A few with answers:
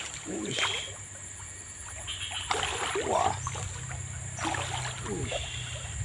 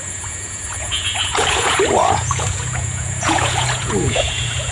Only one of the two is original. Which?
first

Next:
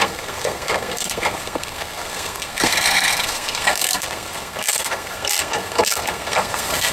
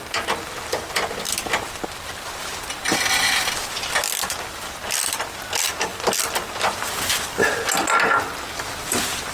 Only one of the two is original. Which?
second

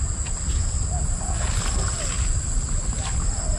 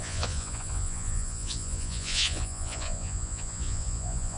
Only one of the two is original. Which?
first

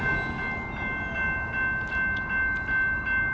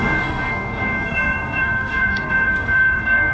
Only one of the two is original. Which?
first